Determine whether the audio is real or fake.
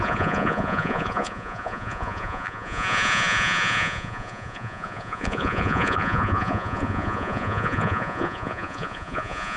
fake